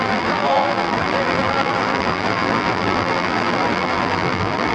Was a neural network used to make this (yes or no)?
yes